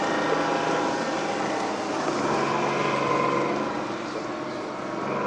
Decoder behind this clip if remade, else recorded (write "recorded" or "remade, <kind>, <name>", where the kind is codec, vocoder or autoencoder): recorded